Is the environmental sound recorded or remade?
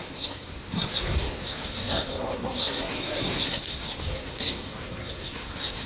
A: remade